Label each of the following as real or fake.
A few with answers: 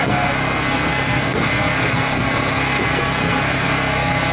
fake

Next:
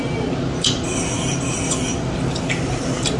real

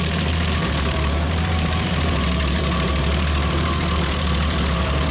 fake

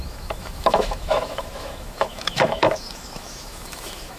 fake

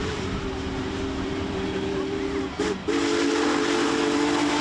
real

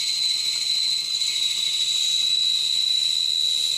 real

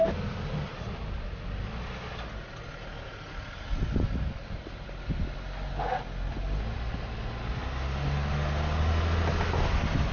real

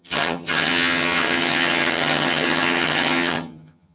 fake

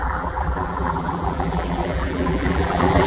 fake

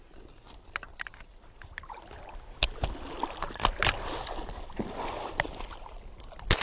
real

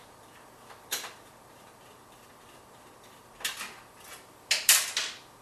real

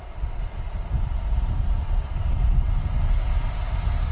real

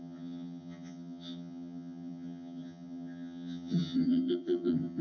fake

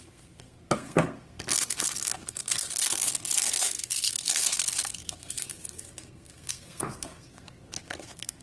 fake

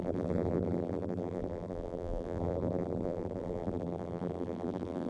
fake